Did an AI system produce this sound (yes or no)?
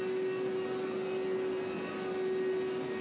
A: no